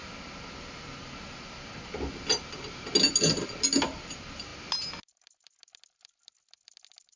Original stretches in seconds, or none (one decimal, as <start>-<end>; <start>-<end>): 0.0-7.2